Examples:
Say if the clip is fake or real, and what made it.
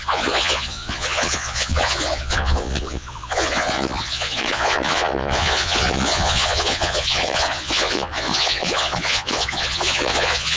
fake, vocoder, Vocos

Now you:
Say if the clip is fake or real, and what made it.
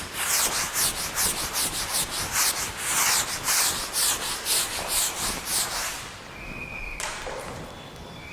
real